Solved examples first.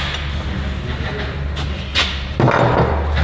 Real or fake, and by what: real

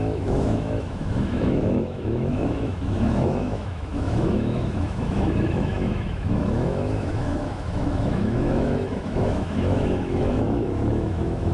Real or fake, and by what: fake, autoencoder, DAC-VAE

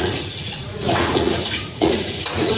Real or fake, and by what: fake, vocoder, Vocos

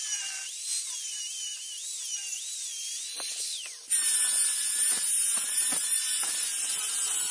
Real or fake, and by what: real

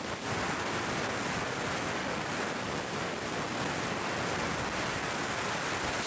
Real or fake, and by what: real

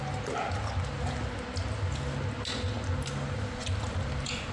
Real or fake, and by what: real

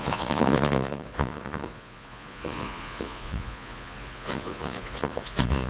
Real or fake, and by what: fake, vocoder, Vocos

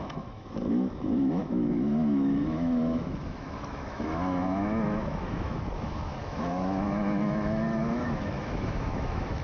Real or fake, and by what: fake, autoencoder, DAC-VAE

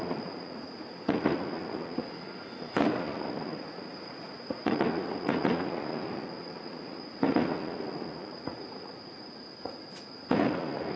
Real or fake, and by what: fake, vocoder, Vocos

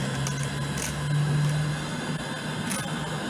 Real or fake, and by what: real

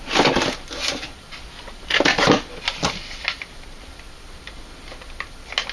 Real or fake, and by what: real